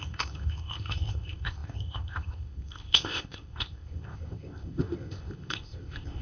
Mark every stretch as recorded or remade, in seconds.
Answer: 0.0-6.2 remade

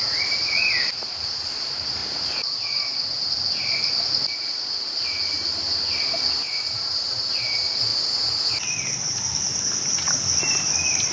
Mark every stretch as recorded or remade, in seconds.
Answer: 0.0-11.1 recorded

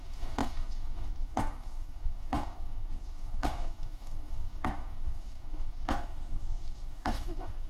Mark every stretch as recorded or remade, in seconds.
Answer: 0.0-7.7 remade

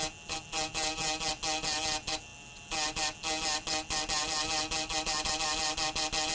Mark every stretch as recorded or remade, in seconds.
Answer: 0.0-6.3 recorded

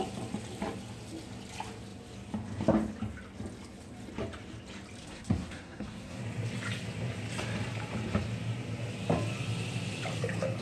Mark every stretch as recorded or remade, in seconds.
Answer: 0.0-5.0 recorded; 5.0-6.2 remade; 6.2-10.6 recorded

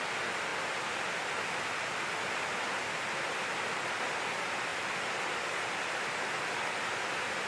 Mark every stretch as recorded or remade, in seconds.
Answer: 0.0-7.5 recorded

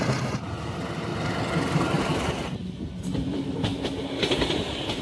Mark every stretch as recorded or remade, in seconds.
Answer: 0.0-1.1 remade; 1.1-2.0 recorded; 2.0-2.4 remade; 2.4-3.0 recorded; 3.0-3.7 remade; 3.7-4.4 recorded; 4.4-5.0 remade

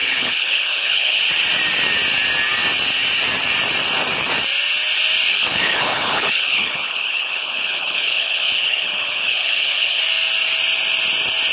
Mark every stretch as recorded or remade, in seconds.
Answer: 0.0-1.2 remade; 1.2-5.3 recorded; 5.3-10.0 remade; 10.0-11.5 recorded